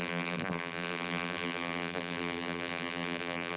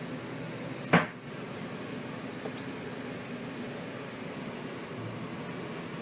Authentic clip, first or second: second